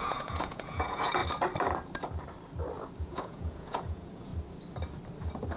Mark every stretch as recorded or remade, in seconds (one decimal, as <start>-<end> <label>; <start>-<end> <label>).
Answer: 0.0-1.2 remade; 1.2-3.0 recorded; 3.0-4.3 remade; 4.3-5.6 recorded